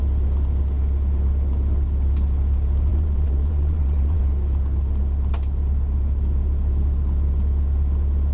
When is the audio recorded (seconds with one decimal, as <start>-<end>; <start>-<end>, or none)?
0.0-2.9; 4.2-8.3

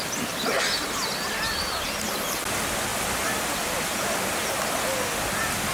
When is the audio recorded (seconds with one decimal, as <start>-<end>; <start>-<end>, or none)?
0.0-5.7